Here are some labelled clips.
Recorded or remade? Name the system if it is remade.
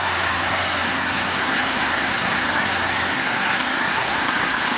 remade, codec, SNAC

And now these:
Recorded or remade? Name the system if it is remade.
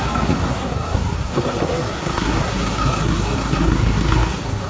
remade, codec, SNAC